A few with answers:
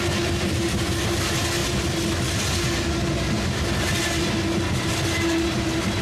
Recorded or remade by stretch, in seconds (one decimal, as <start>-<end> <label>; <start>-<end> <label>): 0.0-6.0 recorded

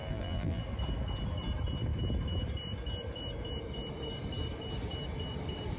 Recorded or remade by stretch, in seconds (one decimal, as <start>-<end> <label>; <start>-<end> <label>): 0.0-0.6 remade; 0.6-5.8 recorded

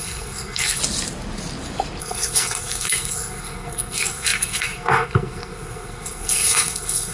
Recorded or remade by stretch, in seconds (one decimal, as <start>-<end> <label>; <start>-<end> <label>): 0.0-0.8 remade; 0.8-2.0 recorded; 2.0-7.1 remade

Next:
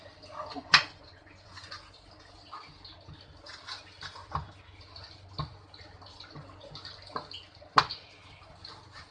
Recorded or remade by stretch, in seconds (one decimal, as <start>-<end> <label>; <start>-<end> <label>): 0.0-0.5 recorded; 0.5-1.8 remade; 1.8-9.1 recorded

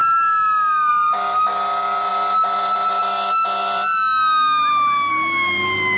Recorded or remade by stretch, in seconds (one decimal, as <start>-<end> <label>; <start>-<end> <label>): 0.0-6.0 recorded

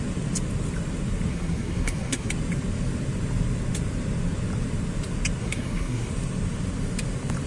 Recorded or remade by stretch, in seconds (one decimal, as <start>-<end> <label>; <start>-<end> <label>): 0.0-1.3 recorded; 1.3-2.3 remade; 2.3-5.4 recorded; 5.4-6.1 remade; 6.1-7.5 recorded